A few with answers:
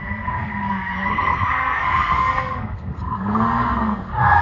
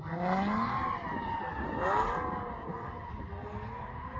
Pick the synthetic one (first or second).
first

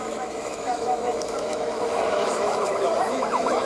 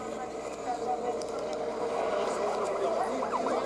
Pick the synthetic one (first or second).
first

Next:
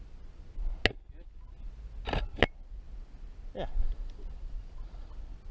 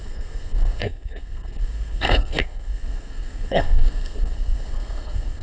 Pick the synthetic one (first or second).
second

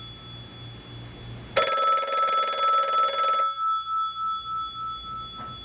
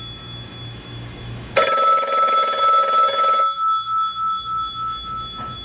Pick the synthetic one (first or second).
second